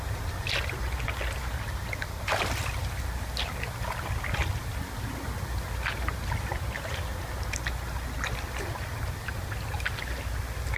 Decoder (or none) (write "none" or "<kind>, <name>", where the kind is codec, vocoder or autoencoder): none